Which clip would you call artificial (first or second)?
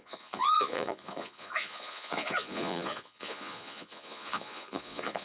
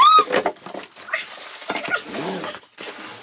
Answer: first